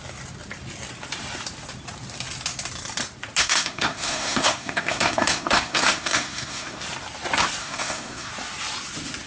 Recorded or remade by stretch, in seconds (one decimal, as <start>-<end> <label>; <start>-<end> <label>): 0.0-3.4 recorded; 3.4-6.8 remade; 6.8-7.6 recorded; 7.6-8.3 remade; 8.3-9.3 recorded